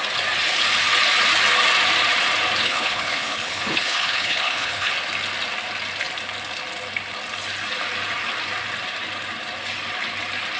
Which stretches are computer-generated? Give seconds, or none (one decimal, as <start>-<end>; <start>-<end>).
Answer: 2.6-4.9